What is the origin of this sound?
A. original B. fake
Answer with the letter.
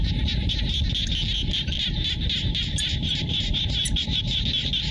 A